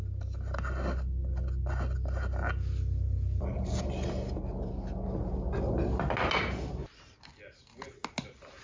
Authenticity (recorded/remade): recorded